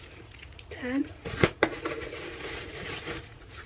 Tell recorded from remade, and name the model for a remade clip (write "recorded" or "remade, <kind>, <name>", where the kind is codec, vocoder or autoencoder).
remade, vocoder, Vocos